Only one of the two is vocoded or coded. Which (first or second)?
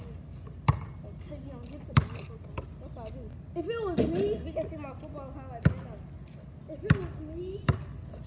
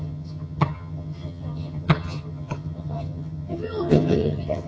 second